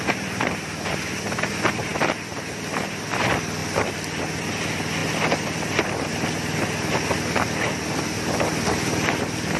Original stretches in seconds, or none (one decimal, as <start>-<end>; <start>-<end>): 0.0-1.9; 3.1-3.6; 4.2-5.0; 6.1-9.6

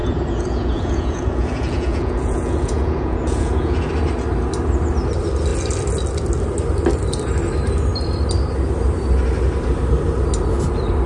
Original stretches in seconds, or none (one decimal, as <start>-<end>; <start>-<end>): 3.9-11.1

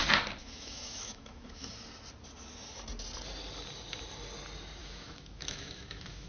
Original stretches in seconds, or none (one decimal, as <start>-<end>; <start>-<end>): 0.0-0.4; 1.7-4.8

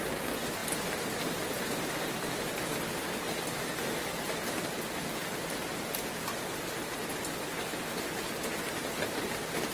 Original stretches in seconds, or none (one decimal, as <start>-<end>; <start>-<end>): 0.0-9.7

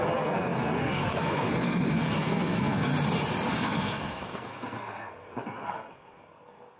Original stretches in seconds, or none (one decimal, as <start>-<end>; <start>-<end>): 2.9-3.5

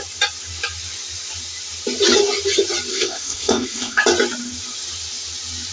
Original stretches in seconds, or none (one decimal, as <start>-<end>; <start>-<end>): 0.0-2.9; 4.0-5.7

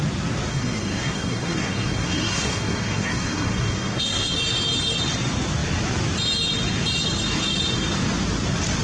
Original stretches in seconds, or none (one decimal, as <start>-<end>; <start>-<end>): 0.0-0.5; 4.3-8.8

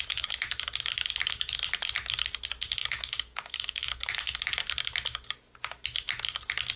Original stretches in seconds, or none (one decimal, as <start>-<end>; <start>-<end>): 0.0-2.8; 4.4-6.8